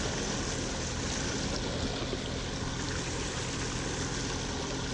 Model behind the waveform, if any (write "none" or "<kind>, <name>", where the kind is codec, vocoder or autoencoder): none